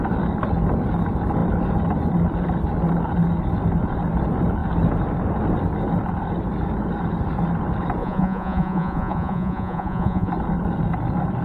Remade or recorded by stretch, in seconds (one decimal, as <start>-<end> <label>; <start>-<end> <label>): 0.0-8.0 recorded; 8.0-10.3 remade; 10.3-11.4 recorded